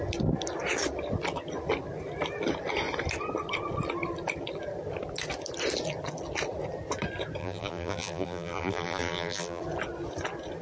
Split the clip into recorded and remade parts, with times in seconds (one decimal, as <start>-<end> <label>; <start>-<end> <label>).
0.0-7.4 recorded; 7.4-9.6 remade; 9.6-10.6 recorded